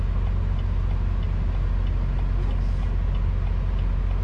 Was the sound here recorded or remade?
recorded